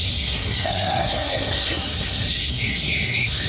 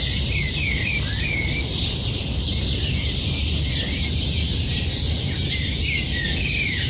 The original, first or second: second